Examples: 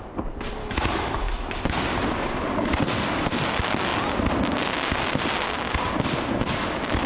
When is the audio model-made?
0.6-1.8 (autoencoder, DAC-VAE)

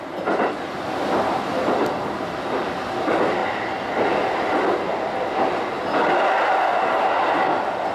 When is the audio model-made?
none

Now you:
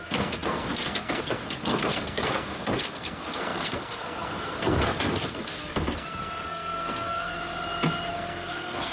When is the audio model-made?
0.0-7.4 (codec, SNAC); 8.1-8.9

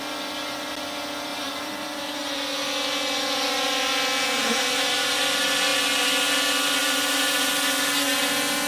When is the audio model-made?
1.3-2.4 (vocoder, BigVGAN v2); 4.4-5.2; 6.8-7.5

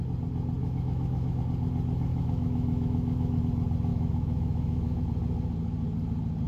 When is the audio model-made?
0.6-1.4 (autoencoder, DAC-VAE); 2.1-3.4; 3.9-5.0

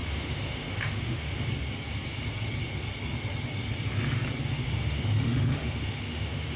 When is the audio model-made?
0.0-1.5 (autoencoder, DAC-VAE); 4.5-6.6

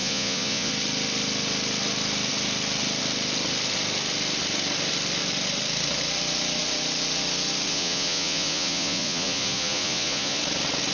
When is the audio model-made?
0.0-0.7 (vocoder, Vocos); 7.7-10.4